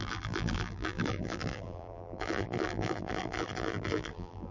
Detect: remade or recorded remade